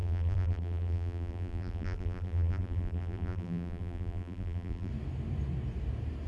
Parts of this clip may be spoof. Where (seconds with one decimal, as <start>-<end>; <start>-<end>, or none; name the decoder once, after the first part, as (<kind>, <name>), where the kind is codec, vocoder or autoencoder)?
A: 0.0-4.9 (vocoder, BigVGAN v2)